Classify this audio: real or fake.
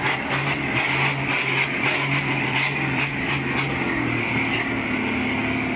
real